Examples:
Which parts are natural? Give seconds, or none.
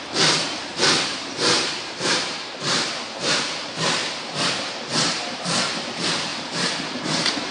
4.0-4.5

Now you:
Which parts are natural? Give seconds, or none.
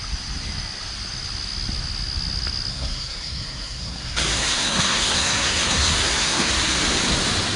0.0-2.7; 6.5-7.6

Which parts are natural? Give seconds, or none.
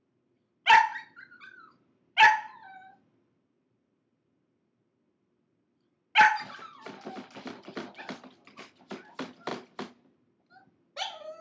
0.0-11.4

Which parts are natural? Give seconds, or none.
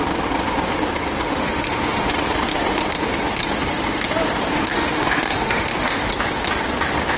0.0-1.4; 2.1-4.5; 6.1-7.2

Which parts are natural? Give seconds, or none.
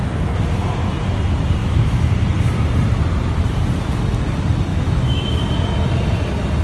0.0-1.6; 2.1-4.7; 5.4-6.6